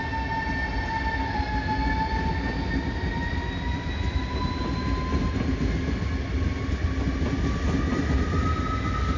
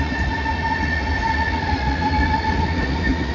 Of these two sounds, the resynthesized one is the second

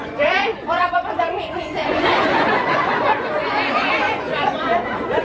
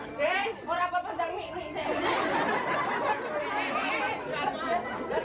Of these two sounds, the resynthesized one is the first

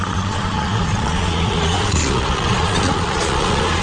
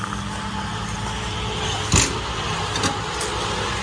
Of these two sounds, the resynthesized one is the first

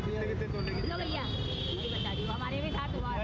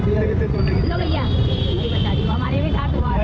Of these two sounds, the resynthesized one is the second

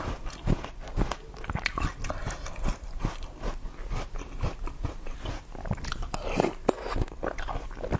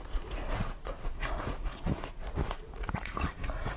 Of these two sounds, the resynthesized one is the second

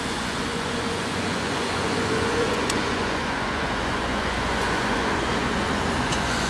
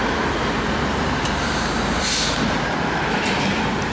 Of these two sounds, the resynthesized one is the first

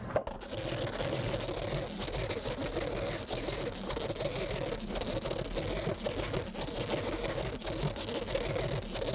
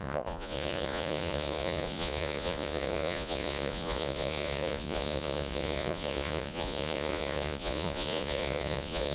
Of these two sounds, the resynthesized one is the second